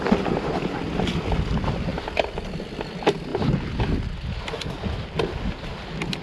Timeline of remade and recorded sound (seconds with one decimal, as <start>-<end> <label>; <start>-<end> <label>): 0.0-6.2 recorded